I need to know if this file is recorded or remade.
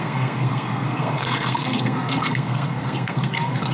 remade